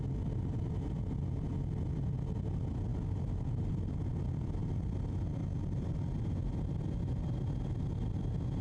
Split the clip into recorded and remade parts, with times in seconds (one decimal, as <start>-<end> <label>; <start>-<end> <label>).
0.0-8.6 recorded